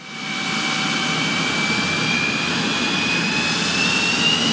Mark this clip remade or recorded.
recorded